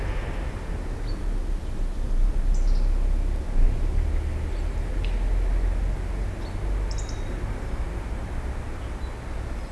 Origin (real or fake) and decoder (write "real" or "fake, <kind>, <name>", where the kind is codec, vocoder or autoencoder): real